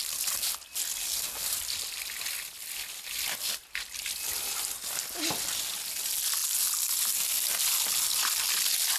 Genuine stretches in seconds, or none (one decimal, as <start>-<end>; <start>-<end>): 0.0-9.0